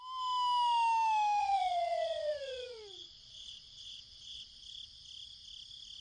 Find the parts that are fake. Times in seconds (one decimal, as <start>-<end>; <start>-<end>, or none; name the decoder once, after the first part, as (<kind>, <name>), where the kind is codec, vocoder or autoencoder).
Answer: 1.4-4.6 (vocoder, Vocos)